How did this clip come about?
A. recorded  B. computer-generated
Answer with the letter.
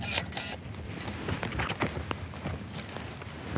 A